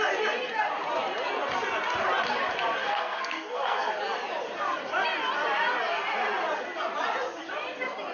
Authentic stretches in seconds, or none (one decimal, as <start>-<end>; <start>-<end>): 0.0-2.8; 3.9-8.1